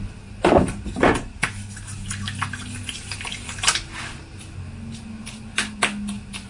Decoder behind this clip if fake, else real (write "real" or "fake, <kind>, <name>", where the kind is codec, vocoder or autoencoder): real